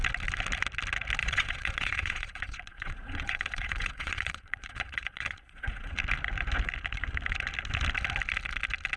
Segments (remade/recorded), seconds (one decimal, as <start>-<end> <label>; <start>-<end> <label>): 0.0-1.2 recorded; 1.2-5.9 remade; 5.9-9.0 recorded